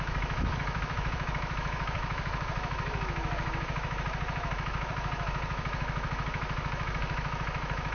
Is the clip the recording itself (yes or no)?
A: no